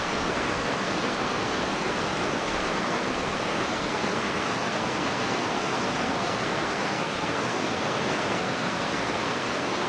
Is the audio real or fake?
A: fake